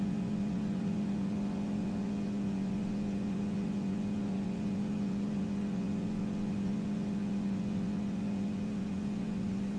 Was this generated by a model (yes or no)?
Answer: yes